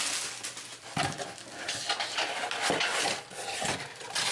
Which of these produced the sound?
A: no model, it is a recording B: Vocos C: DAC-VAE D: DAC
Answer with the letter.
A